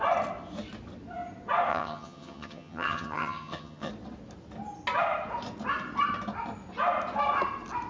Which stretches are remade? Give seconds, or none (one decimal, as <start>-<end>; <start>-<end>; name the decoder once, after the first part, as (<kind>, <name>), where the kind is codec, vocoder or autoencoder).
1.7-3.9 (vocoder, HiFi-GAN)